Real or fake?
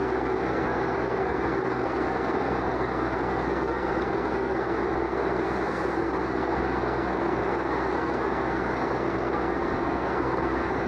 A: fake